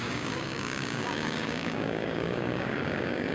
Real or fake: fake